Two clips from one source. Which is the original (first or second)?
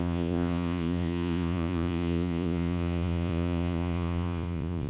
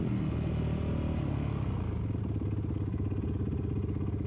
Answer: second